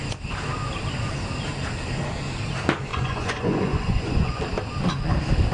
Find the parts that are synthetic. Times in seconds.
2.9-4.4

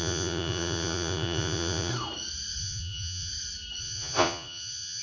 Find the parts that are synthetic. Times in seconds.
0.0-1.9; 2.6-3.3; 3.8-5.0

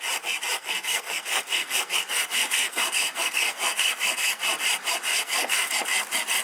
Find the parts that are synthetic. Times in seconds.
0.6-4.4; 5.1-5.7

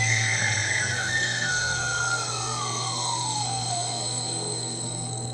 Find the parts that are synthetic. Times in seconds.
0.0-5.3

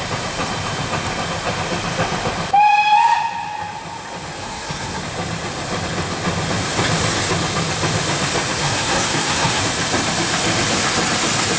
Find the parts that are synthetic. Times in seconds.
4.4-5.0; 8.6-9.6

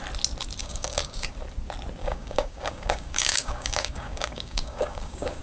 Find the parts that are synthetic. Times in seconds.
0.6-1.3; 2.0-5.4

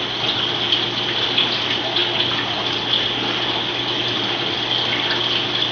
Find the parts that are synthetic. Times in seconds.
none

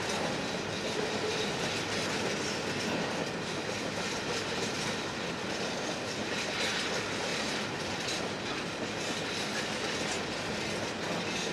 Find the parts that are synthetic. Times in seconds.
none